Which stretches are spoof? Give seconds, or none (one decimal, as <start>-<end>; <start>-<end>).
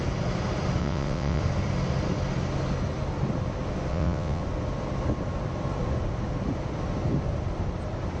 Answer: 0.8-1.4; 3.9-4.4